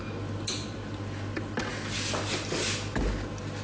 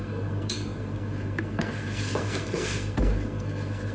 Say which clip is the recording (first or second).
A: first